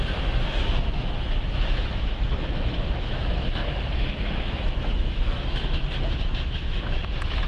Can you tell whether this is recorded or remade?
remade